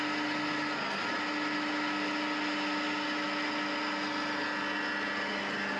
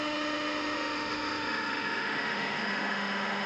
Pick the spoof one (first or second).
second